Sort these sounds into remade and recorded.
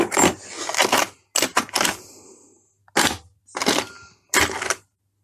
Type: recorded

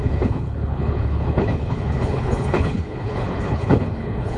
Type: remade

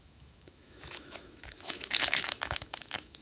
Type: remade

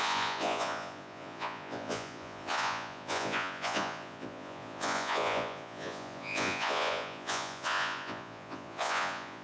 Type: remade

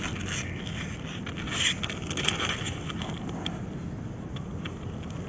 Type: recorded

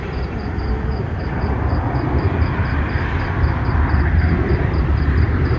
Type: remade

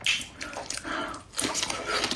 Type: recorded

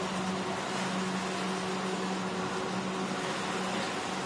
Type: recorded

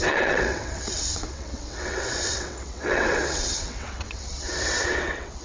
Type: remade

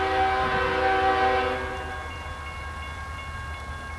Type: recorded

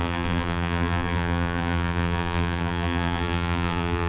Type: remade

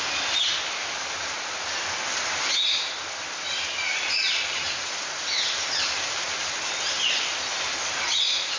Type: recorded